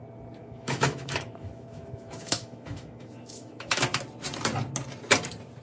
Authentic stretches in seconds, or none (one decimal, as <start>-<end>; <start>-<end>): 0.0-0.4; 3.8-5.6